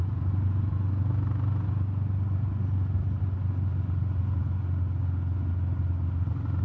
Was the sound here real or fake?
real